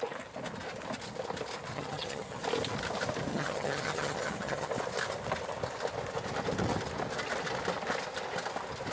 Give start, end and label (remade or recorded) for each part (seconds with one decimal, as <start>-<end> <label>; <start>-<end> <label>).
0.0-1.7 recorded; 1.7-2.4 remade; 2.4-3.3 recorded; 3.3-4.7 remade; 4.7-8.9 recorded